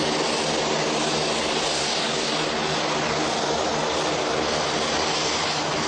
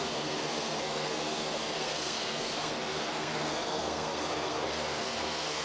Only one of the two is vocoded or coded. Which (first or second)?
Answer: second